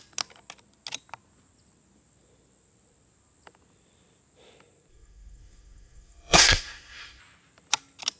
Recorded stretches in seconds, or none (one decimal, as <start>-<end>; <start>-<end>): 0.0-4.9; 7.2-8.2